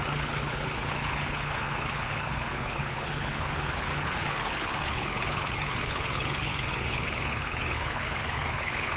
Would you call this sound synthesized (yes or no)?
yes